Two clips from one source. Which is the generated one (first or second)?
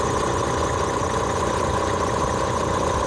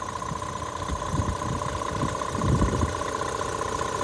first